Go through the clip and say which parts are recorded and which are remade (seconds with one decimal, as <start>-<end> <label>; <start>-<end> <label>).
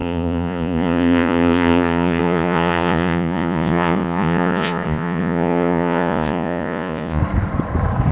0.0-7.2 remade; 7.2-8.1 recorded